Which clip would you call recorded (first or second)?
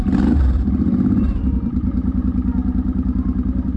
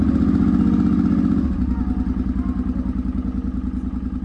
second